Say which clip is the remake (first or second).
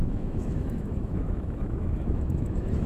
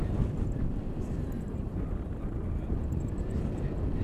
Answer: first